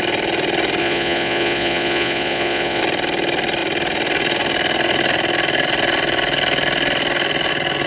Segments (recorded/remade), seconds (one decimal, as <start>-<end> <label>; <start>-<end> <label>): 0.0-0.8 recorded; 0.8-2.8 remade; 2.8-7.9 recorded